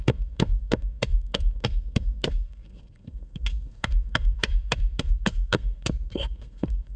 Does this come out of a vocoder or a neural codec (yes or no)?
yes